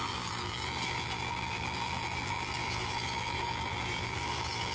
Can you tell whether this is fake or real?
fake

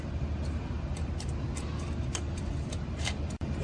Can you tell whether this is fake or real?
fake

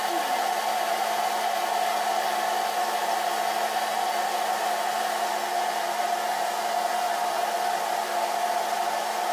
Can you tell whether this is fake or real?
real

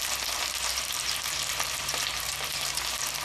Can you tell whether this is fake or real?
fake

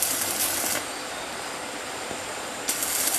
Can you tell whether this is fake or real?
real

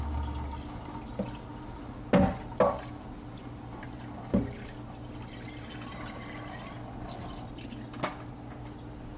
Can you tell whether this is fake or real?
real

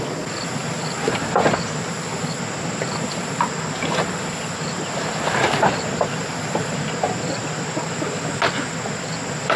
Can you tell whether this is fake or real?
real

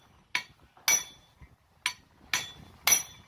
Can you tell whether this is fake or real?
real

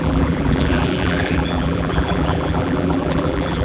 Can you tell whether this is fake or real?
fake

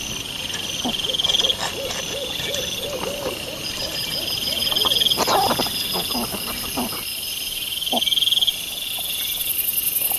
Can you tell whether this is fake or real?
real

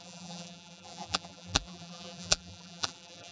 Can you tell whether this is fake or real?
fake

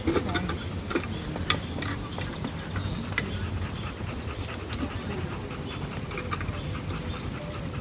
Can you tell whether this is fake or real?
real